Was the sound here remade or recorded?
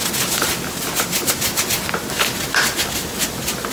recorded